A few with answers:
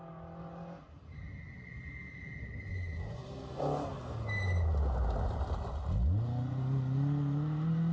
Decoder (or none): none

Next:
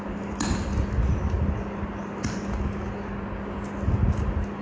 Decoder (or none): none